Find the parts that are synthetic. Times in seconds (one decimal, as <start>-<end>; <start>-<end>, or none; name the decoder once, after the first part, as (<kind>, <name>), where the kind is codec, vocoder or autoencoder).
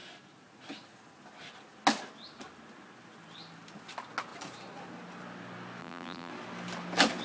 5.8-6.3 (vocoder, BigVGAN v2)